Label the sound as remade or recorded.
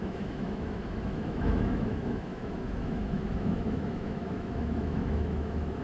remade